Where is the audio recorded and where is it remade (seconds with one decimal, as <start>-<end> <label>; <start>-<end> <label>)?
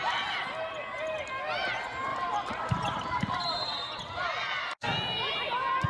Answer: 0.0-2.1 recorded; 2.1-4.0 remade; 4.0-5.9 recorded